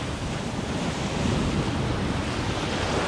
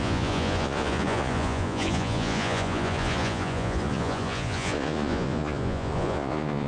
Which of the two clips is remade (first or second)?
second